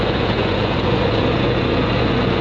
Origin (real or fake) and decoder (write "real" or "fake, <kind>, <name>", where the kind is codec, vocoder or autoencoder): fake, vocoder, Vocos